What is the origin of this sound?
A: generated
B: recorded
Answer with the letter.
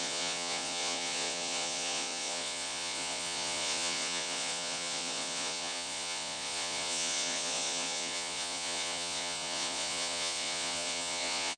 A